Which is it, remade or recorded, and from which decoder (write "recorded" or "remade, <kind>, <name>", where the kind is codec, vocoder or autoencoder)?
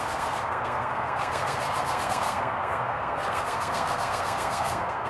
remade, codec, SNAC